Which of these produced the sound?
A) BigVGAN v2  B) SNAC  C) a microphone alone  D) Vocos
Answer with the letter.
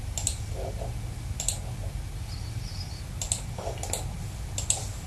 C